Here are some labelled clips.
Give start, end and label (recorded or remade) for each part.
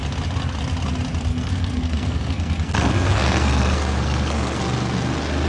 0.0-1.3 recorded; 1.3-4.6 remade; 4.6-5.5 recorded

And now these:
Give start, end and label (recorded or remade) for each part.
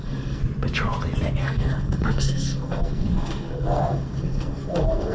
0.0-0.4 remade; 0.4-1.4 recorded; 1.4-5.1 remade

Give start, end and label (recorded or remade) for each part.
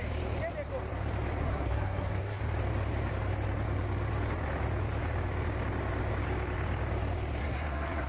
0.0-1.4 recorded; 1.4-2.4 remade; 2.4-7.4 recorded; 7.4-8.1 remade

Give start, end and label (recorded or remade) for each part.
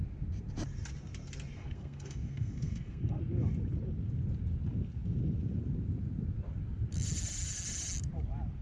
0.0-1.6 recorded; 1.6-3.2 remade; 3.2-8.6 recorded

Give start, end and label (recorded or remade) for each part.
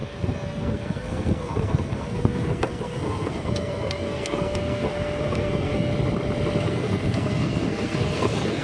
0.0-5.9 remade; 5.9-6.6 recorded; 6.6-8.6 remade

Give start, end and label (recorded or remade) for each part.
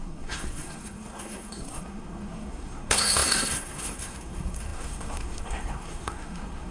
0.0-6.7 remade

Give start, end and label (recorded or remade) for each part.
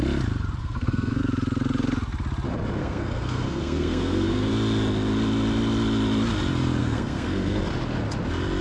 0.0-0.6 recorded; 0.6-1.2 remade; 1.2-2.8 recorded; 2.8-4.5 remade; 4.5-6.8 recorded; 6.8-7.6 remade; 7.6-8.6 recorded